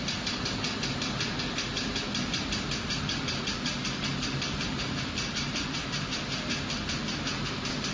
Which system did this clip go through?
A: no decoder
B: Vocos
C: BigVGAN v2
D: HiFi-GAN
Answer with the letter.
A